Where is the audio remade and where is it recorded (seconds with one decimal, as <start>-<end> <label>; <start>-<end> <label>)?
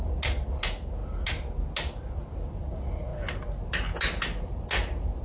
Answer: 0.0-5.2 recorded